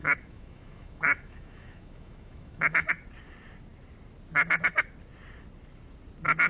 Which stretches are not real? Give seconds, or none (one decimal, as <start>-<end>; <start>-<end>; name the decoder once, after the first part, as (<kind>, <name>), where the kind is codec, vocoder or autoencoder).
0.0-2.9 (autoencoder, DAC-VAE)